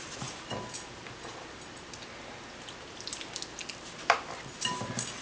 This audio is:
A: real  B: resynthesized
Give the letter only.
A